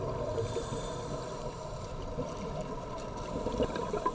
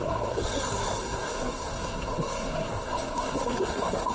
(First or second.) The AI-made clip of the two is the second